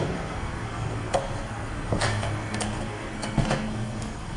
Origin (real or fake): fake